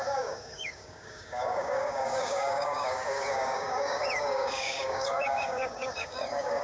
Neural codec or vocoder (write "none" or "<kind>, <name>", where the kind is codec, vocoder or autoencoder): codec, DAC